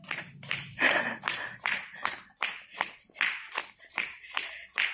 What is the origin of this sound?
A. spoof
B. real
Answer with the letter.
B